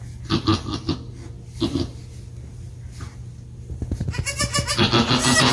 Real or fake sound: real